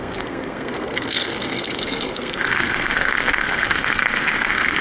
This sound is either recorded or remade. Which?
remade